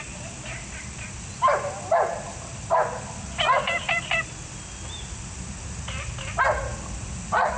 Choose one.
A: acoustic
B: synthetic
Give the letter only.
A